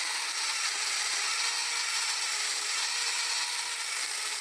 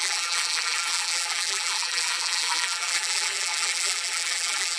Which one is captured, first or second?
first